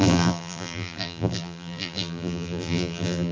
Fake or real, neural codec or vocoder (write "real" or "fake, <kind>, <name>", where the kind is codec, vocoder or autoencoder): fake, vocoder, BigVGAN v2